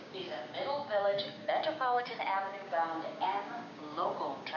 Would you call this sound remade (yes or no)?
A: yes